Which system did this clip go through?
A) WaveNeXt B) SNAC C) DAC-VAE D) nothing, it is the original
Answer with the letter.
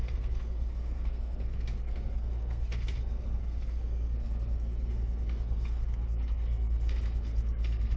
B